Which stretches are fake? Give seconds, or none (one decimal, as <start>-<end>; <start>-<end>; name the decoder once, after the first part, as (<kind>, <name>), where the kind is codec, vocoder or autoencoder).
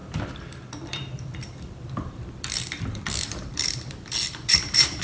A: 0.0-5.0 (vocoder, BigVGAN v2)